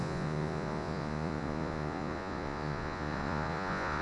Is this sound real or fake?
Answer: fake